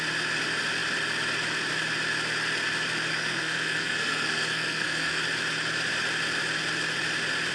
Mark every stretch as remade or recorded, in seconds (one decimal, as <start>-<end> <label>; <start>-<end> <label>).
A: 0.0-3.1 recorded; 3.1-5.2 remade; 5.2-7.5 recorded